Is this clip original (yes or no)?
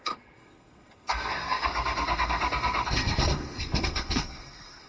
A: no